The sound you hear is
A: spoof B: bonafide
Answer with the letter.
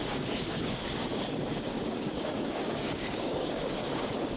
A